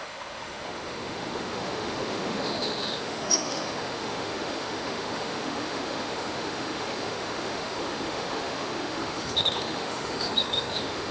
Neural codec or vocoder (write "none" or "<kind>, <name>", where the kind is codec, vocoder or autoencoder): autoencoder, DAC-VAE